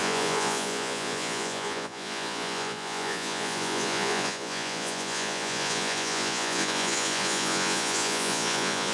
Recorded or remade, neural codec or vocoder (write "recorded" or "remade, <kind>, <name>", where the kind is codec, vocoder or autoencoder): remade, vocoder, Vocos